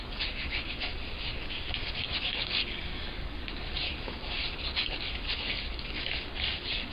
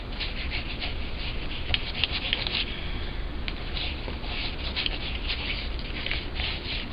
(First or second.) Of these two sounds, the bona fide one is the second